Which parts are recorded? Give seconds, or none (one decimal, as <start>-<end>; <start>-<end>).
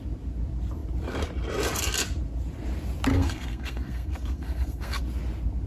0.0-3.1; 5.0-5.7